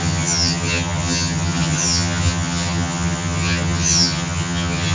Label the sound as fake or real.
fake